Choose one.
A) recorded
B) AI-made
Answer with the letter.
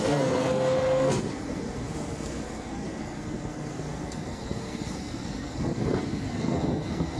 B